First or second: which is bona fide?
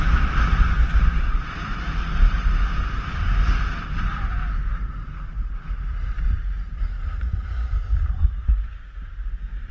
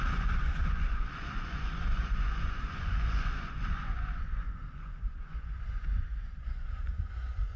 first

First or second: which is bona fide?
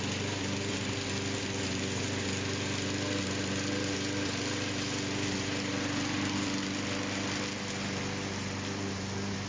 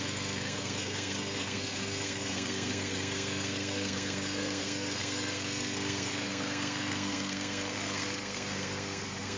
first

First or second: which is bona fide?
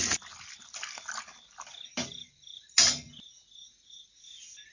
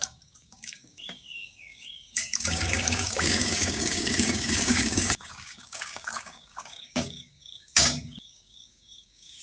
first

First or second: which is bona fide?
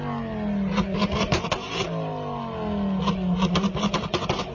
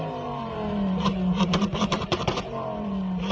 first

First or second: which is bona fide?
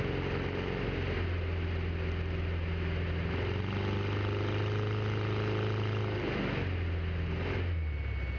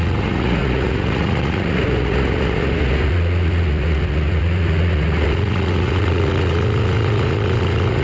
first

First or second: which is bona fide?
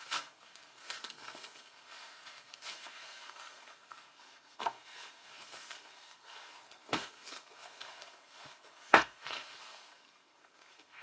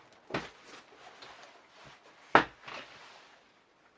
second